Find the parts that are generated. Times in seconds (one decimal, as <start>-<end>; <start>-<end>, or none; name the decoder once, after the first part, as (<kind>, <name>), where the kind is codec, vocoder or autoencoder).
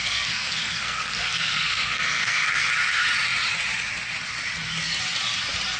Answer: 0.0-2.7 (codec, SNAC)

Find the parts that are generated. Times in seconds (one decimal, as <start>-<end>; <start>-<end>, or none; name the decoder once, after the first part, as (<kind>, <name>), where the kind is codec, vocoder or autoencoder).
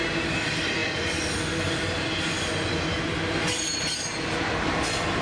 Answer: none